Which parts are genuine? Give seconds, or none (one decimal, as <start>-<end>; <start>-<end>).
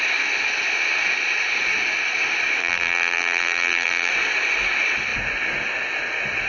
0.0-2.6; 4.1-6.5